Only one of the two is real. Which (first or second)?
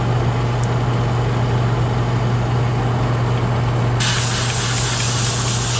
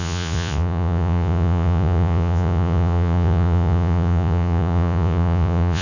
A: first